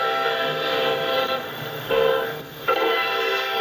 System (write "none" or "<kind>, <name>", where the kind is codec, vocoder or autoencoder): codec, SNAC